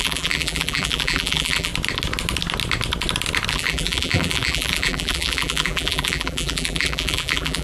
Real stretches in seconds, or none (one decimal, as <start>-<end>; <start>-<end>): 1.7-3.5